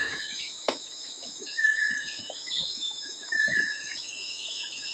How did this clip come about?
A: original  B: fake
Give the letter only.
B